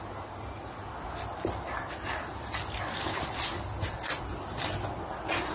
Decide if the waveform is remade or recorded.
recorded